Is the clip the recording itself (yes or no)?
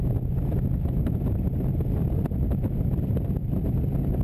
yes